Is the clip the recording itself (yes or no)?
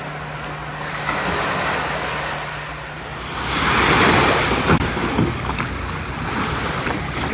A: yes